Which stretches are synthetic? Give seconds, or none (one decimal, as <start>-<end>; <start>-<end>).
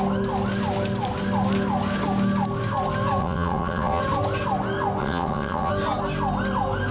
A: 3.2-4.0; 5.0-5.7